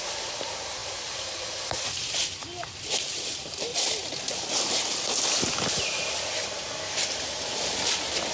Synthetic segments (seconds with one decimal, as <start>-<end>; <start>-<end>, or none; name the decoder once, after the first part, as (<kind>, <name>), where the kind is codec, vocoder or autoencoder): 0.0-2.2 (vocoder, BigVGAN v2); 3.0-3.7